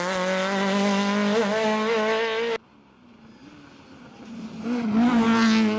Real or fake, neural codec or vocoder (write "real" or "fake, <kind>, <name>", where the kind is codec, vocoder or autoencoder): real